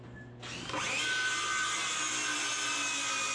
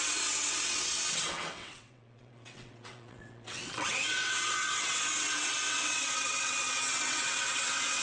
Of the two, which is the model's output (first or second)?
second